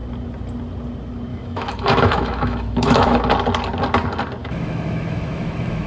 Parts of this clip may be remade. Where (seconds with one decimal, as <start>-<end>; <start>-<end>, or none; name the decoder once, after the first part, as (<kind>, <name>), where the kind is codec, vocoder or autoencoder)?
1.3-3.2 (autoencoder, DAC-VAE); 4.4-5.9